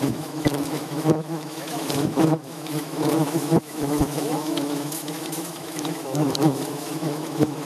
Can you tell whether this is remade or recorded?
remade